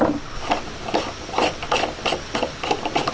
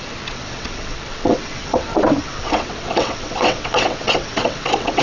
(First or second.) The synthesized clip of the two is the second